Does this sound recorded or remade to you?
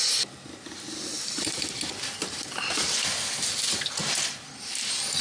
recorded